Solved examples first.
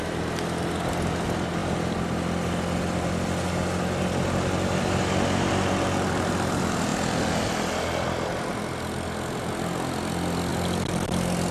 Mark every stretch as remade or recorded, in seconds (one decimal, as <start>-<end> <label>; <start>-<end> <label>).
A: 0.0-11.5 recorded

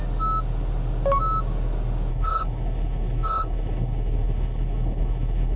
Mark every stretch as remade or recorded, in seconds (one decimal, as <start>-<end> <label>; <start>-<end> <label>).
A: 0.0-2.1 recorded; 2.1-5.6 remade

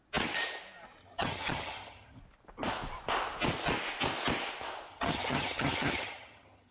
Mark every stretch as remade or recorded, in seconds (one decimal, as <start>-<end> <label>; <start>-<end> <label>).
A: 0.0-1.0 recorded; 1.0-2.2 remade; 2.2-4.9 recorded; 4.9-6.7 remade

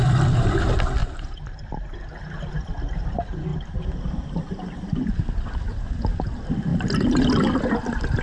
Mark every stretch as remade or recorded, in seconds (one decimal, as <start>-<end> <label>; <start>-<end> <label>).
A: 0.0-1.0 recorded; 1.0-1.8 remade; 1.8-3.5 recorded; 3.5-5.5 remade; 5.5-6.7 recorded; 6.7-8.2 remade